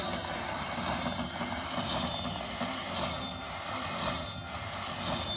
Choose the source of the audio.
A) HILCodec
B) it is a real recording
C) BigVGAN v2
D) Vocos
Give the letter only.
B